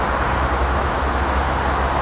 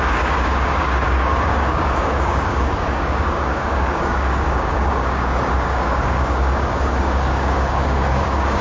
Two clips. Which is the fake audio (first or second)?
second